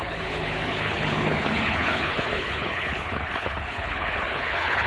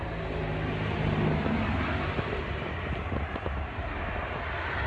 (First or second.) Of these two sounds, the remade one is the first